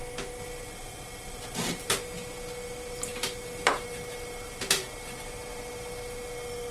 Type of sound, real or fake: real